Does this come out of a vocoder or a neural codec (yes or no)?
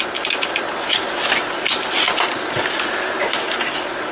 no